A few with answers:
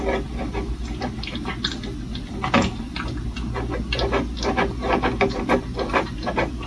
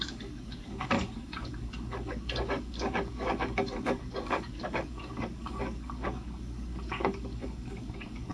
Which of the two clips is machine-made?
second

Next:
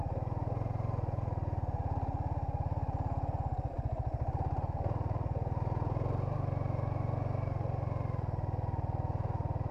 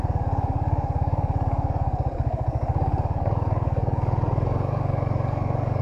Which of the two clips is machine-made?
second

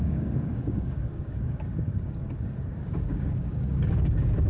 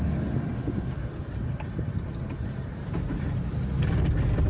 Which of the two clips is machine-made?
first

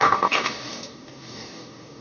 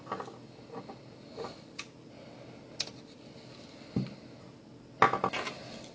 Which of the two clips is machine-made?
first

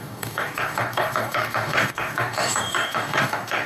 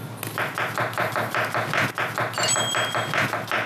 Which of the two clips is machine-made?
first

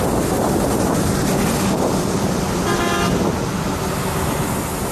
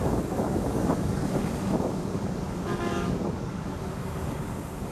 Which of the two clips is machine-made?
second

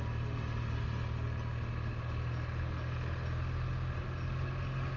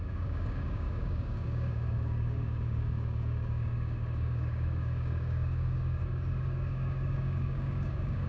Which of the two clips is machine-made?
second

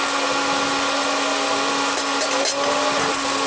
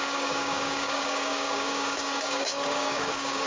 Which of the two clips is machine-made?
second